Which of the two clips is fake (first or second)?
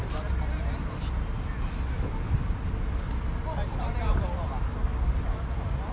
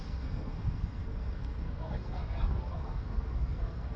second